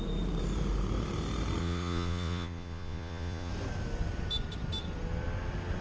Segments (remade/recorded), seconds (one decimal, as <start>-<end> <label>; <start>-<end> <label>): 0.0-1.6 recorded; 1.6-3.5 remade; 3.5-5.8 recorded